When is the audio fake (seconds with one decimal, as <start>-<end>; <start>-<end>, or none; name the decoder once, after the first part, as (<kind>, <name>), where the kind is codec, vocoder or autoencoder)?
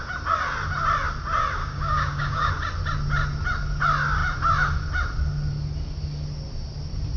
1.6-2.5 (codec, DAC)